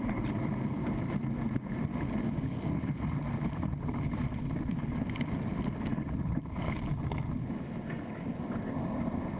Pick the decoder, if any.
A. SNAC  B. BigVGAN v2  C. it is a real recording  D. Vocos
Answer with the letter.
B